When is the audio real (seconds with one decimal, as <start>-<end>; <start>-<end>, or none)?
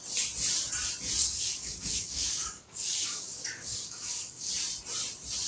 0.0-1.2; 4.5-5.5